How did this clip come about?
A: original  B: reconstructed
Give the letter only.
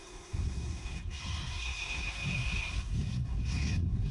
B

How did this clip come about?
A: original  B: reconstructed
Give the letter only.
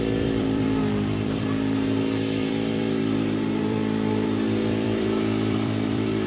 B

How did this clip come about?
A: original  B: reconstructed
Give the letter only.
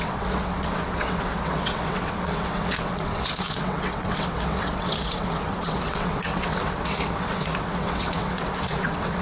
B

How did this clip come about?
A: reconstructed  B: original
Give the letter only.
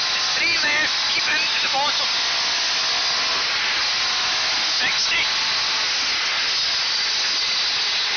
B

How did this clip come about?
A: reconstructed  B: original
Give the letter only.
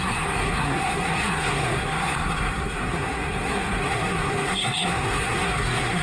A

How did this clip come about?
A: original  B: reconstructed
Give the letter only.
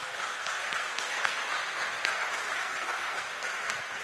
B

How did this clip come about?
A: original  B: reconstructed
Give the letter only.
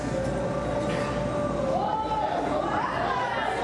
A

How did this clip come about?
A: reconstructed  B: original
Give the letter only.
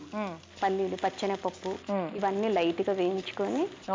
B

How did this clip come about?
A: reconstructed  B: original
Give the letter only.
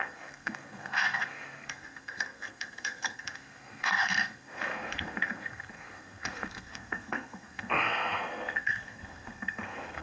A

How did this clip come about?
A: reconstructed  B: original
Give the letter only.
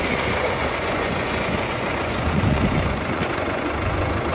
A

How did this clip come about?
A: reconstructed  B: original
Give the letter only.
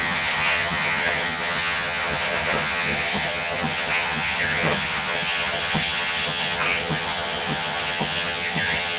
A